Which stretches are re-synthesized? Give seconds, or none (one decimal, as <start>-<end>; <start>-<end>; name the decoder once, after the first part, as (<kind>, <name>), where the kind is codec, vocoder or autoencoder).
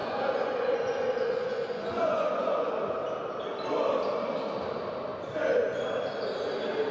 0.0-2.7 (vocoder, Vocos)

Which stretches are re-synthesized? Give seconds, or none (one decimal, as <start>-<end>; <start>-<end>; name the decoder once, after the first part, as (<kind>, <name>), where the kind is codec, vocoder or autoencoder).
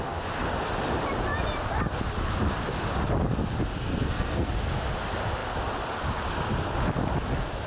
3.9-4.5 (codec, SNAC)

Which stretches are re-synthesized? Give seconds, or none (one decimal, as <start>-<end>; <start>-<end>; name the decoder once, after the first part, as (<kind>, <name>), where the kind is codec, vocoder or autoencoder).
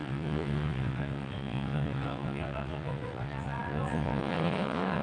0.0-5.0 (vocoder, WaveNeXt)